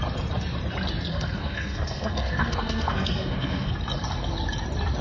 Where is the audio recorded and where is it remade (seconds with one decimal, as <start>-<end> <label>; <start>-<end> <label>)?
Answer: 0.0-1.1 recorded; 1.1-3.7 remade; 3.7-5.0 recorded

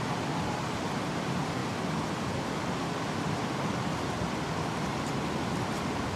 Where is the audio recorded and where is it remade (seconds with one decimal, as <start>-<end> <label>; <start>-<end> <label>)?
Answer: 0.0-1.6 remade; 1.6-3.1 recorded; 3.1-4.9 remade; 4.9-5.7 recorded; 5.7-6.2 remade

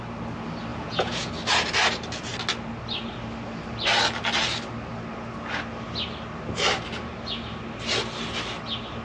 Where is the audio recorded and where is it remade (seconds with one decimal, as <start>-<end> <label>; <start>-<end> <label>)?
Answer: 0.0-0.7 recorded; 0.7-1.3 remade; 1.3-9.0 recorded